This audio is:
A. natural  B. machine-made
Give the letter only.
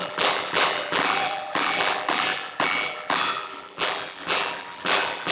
B